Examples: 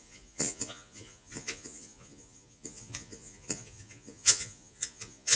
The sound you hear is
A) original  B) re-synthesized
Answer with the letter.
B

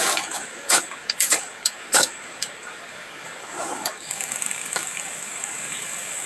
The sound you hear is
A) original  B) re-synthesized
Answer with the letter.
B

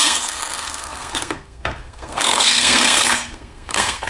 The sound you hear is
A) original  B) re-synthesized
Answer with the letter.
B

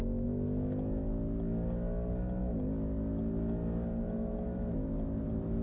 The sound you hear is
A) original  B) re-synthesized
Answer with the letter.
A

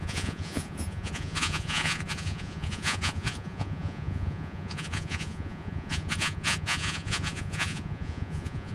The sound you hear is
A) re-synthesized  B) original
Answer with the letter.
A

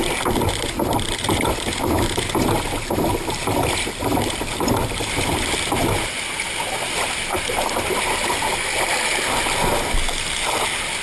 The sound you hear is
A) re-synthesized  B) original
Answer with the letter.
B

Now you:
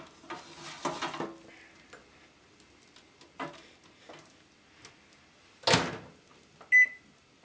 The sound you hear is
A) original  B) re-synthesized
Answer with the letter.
A